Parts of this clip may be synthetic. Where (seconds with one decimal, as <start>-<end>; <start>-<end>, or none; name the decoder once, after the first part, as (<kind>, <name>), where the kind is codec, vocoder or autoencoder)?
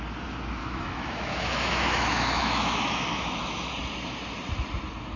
0.6-3.7 (autoencoder, DAC-VAE)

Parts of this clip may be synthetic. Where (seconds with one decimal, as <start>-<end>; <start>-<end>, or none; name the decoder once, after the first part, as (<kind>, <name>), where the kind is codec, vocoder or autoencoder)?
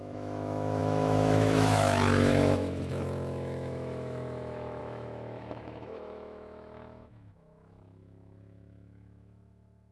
0.0-9.9 (autoencoder, DAC-VAE)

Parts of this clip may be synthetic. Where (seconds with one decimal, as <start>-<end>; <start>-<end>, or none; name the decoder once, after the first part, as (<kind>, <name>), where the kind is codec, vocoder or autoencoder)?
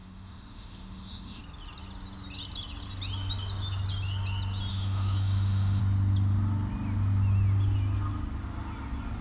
0.0-1.4 (autoencoder, DAC-VAE); 4.7-5.8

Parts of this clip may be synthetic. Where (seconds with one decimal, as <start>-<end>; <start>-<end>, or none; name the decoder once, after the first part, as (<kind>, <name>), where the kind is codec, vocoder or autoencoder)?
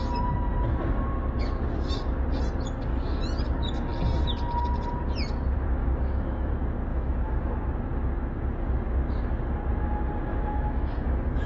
5.8-6.5 (autoencoder, DAC-VAE); 6.9-7.5; 10.3-11.5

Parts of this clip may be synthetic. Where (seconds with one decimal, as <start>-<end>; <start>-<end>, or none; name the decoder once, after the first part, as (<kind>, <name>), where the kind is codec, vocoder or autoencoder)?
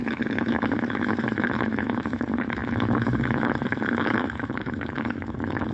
0.0-5.7 (autoencoder, DAC-VAE)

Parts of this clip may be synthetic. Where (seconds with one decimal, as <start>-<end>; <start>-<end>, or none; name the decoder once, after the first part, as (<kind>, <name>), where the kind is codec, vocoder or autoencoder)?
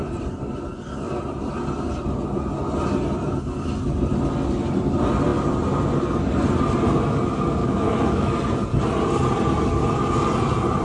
7.6-8.3 (autoencoder, DAC-VAE)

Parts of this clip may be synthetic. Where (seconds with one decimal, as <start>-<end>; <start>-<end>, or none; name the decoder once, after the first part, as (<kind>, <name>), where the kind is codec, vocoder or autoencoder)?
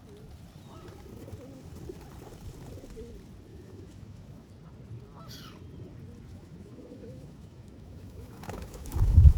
3.5-4.5 (autoencoder, DAC-VAE); 6.3-9.4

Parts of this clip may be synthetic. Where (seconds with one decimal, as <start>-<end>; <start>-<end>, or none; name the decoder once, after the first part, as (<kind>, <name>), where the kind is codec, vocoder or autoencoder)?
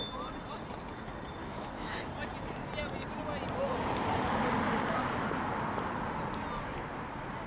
1.4-2.1 (autoencoder, DAC-VAE)